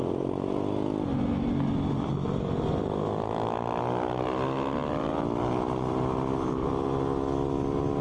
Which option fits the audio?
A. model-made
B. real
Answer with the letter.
B